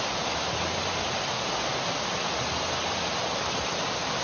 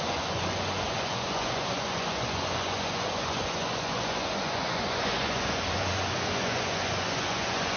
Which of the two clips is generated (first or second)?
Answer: second